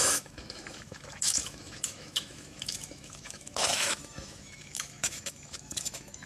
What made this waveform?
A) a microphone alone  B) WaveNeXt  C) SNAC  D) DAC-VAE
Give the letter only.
D